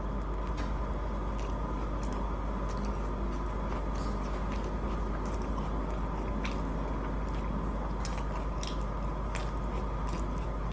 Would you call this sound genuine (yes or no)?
yes